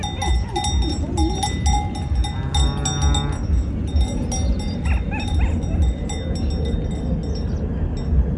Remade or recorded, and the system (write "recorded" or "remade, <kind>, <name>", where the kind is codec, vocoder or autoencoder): recorded